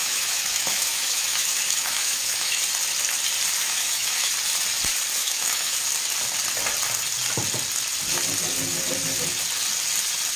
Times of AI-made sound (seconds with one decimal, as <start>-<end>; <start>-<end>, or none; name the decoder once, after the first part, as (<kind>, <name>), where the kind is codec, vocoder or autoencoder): 0.0-2.6 (autoencoder, DAC-VAE); 3.6-4.3; 5.2-5.8